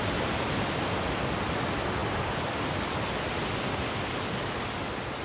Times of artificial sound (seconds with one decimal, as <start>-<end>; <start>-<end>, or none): none